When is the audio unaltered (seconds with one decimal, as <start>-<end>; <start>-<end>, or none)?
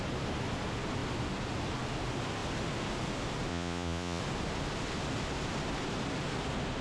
0.0-3.5; 4.2-6.8